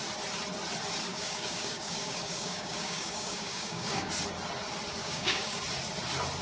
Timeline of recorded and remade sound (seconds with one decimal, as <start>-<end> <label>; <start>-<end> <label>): 0.0-1.1 recorded; 1.1-4.1 remade; 4.1-5.0 recorded; 5.0-5.6 remade; 5.6-6.4 recorded